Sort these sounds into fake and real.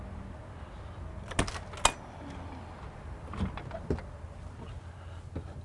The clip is real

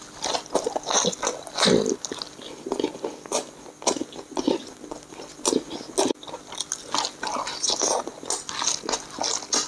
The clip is real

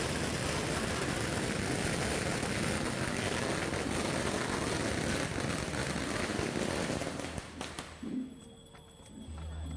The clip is real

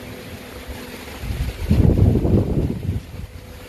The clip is real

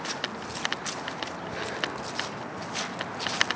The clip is real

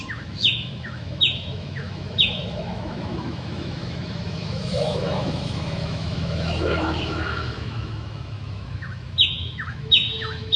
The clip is fake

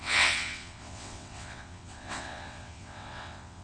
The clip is fake